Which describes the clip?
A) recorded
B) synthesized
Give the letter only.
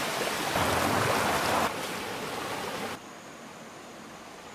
A